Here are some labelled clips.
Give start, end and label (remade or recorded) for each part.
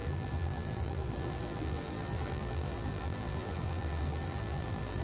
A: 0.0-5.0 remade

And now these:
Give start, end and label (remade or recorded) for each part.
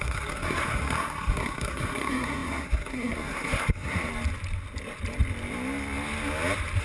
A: 0.0-4.1 remade; 4.1-6.8 recorded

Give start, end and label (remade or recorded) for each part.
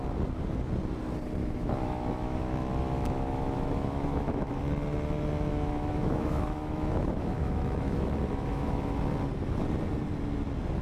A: 0.0-1.4 recorded; 1.4-4.6 remade; 4.6-5.5 recorded; 5.5-9.0 remade; 9.0-10.8 recorded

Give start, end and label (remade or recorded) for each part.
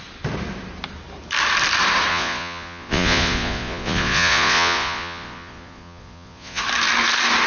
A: 0.0-2.1 recorded; 2.1-6.6 remade; 6.6-7.5 recorded